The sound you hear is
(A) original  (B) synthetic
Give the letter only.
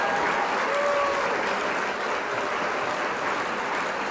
A